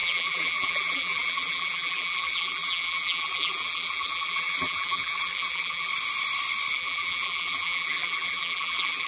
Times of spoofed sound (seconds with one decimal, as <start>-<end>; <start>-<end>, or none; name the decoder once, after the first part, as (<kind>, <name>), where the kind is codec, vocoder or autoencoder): 0.0-5.9 (vocoder, BigVGAN v2); 6.7-9.1